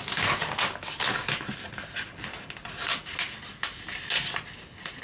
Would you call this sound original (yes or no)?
yes